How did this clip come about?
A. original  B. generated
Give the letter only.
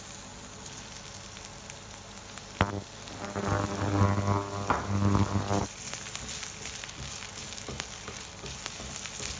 A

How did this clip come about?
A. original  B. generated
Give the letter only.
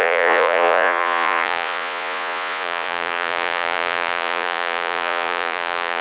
B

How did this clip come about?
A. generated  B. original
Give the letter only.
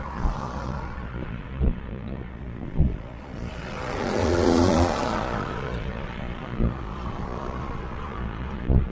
A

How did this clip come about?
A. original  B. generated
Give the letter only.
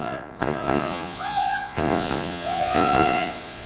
B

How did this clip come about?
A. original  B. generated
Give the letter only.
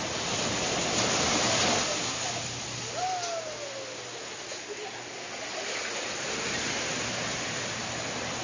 A